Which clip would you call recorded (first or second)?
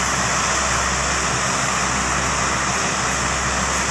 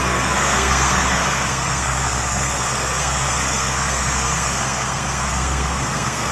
first